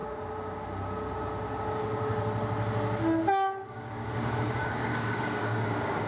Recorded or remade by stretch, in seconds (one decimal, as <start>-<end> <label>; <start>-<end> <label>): 0.0-3.7 recorded; 3.7-6.1 remade